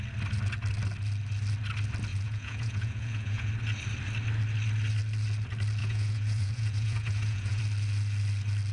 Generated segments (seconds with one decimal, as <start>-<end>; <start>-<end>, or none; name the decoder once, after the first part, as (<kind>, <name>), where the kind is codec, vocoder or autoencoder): 2.1-3.5 (vocoder, Vocos); 5.8-7.6